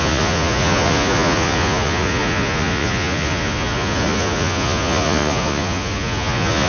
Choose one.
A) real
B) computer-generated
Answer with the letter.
B